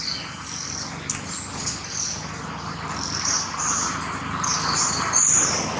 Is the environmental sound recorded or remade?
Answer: recorded